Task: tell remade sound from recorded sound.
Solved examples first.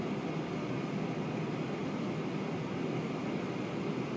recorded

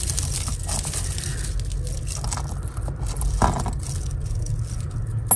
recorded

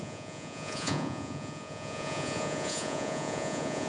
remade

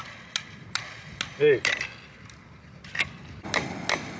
recorded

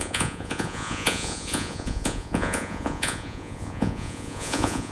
remade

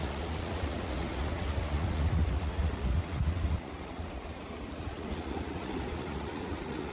remade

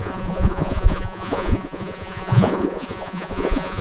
remade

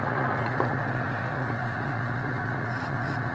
remade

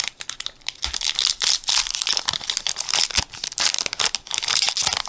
recorded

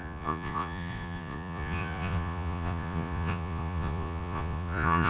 remade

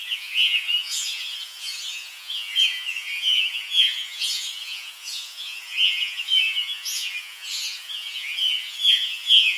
remade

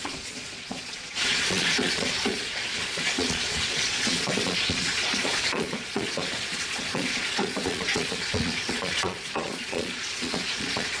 remade